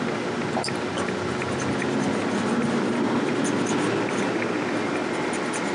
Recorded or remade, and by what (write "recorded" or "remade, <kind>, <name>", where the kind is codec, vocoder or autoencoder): recorded